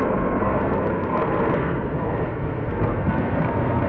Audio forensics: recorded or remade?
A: remade